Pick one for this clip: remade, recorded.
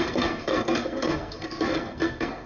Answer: remade